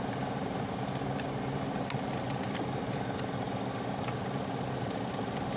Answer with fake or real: real